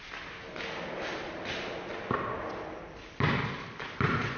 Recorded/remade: recorded